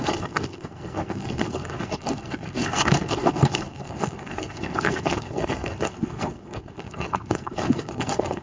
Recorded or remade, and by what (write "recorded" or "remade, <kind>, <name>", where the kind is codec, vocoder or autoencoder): remade, codec, SNAC